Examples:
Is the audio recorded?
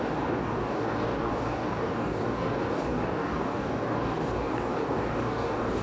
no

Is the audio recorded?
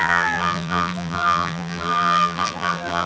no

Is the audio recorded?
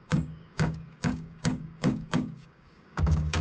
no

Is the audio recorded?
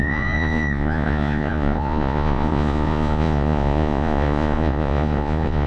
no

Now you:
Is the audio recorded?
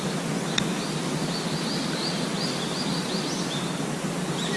yes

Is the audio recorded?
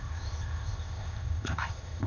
no